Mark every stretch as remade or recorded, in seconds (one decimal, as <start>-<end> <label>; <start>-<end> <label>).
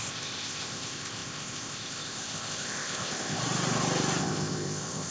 0.0-3.4 remade; 3.4-4.2 recorded; 4.2-5.1 remade